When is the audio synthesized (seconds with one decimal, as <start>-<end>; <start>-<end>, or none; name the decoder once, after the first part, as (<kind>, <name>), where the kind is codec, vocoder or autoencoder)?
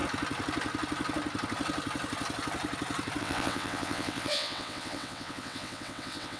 3.2-6.4 (vocoder, WaveNeXt)